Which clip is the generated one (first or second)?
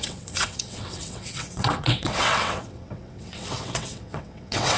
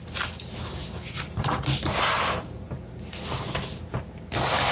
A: first